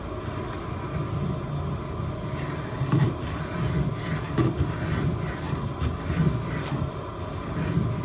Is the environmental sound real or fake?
real